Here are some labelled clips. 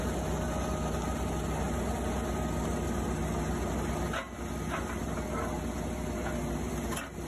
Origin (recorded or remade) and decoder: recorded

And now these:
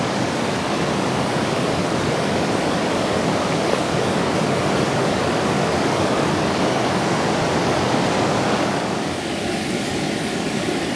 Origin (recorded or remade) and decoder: remade, codec, DAC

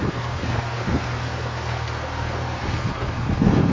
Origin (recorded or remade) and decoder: remade, codec, SNAC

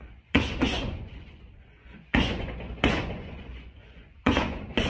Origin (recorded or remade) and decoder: remade, vocoder, Vocos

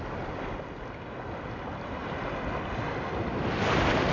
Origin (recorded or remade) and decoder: recorded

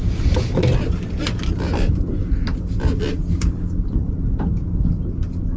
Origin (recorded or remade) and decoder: recorded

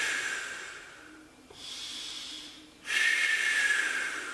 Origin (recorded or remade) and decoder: remade, vocoder, BigVGAN v2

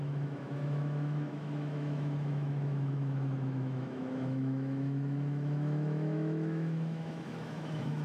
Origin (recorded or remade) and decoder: remade, autoencoder, DAC-VAE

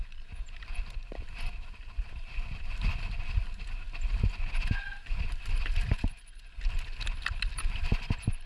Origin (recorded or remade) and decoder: recorded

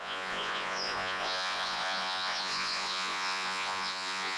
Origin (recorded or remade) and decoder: remade, vocoder, Vocos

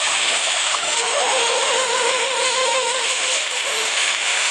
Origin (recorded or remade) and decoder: remade, autoencoder, DAC-VAE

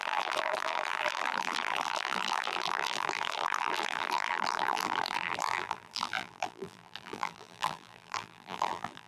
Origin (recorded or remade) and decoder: remade, vocoder, BigVGAN v2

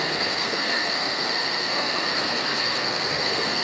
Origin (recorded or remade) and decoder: remade, codec, SNAC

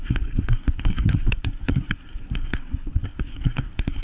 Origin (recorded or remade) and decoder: remade, codec, SNAC